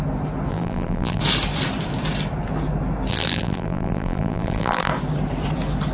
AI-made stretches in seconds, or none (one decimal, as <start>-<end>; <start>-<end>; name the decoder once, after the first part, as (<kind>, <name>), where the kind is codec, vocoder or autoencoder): 0.5-1.2 (vocoder, BigVGAN v2); 3.1-4.9